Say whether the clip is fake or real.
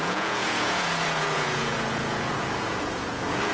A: fake